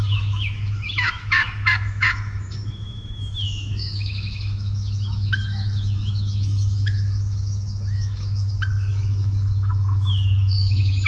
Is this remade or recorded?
remade